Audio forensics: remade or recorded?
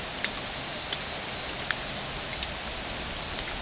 recorded